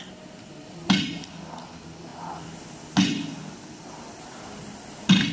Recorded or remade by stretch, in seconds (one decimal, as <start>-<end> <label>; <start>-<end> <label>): 0.0-5.3 recorded